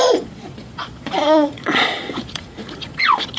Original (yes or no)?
no